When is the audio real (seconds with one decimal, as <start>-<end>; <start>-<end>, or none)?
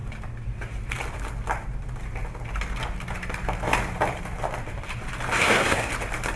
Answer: 0.0-5.4; 5.9-6.4